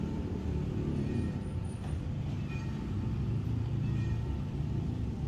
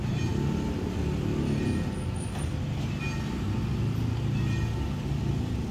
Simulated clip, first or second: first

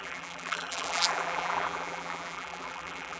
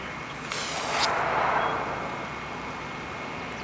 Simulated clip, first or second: first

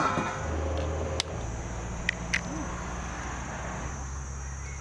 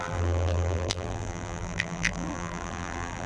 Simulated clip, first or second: second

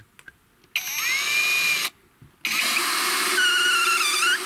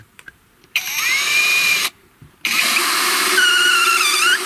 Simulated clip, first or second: second